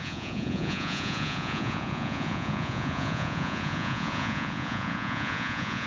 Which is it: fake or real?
fake